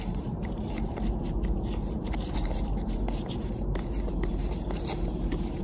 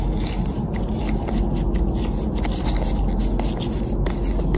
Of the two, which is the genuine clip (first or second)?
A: second